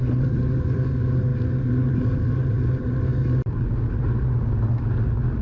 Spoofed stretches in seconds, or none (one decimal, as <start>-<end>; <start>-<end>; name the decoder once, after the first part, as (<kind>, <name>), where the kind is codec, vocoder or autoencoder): none